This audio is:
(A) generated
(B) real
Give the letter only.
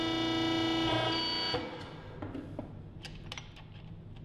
B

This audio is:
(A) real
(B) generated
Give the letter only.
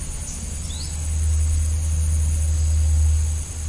A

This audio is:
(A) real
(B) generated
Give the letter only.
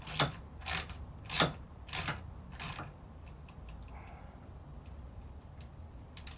B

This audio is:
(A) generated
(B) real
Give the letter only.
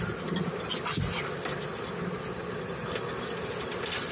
B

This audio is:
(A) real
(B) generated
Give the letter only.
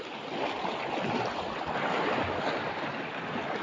A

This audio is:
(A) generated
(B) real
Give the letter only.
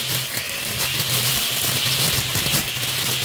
A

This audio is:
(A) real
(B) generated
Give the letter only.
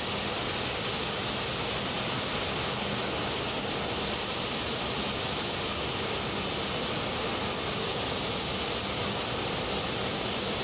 A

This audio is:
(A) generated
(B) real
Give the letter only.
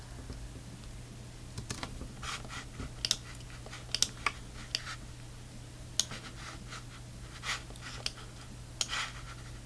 B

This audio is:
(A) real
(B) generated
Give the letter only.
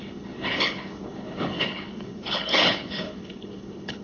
B